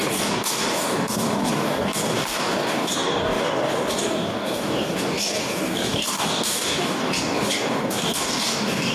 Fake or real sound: fake